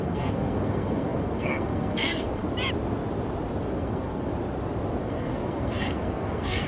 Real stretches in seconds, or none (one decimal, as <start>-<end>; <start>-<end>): 2.4-3.6; 4.3-5.0